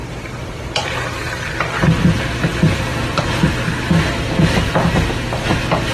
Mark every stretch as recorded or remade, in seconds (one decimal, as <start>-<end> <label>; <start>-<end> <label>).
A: 0.0-2.9 recorded; 2.9-4.3 remade; 4.3-5.9 recorded